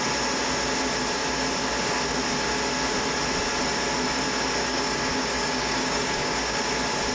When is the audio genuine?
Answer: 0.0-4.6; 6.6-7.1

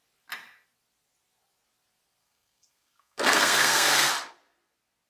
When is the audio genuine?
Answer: 0.0-2.2; 4.1-5.1

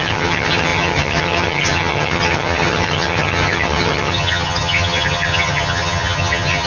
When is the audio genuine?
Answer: none

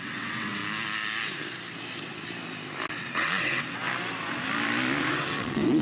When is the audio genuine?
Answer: 0.6-3.0; 3.9-5.0

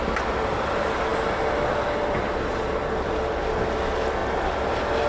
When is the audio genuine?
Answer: 0.0-5.1

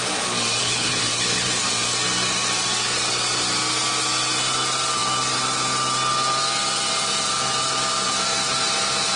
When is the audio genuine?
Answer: 0.0-0.6; 1.6-9.2